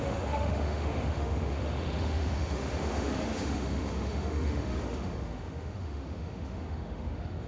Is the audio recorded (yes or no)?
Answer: no